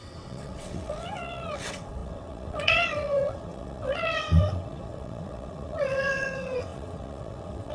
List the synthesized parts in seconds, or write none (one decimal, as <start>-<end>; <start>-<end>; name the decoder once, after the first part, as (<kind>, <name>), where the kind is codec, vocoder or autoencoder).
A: 0.0-7.7 (vocoder, WaveNeXt)